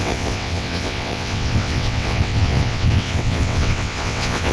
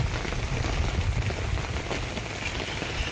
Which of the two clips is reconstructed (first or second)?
first